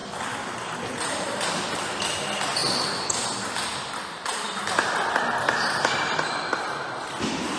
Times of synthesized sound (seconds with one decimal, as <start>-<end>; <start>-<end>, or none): none